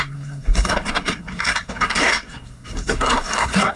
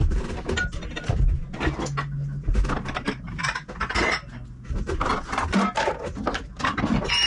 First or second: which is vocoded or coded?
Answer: first